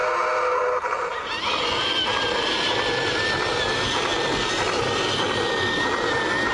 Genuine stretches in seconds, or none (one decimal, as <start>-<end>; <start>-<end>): 0.0-6.5